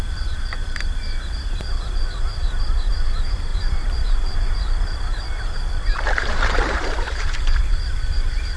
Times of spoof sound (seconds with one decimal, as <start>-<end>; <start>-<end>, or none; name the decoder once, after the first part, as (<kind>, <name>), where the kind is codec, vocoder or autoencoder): 0.0-8.6 (vocoder, BigVGAN v2)